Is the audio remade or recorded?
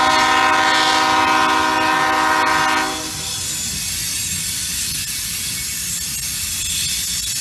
recorded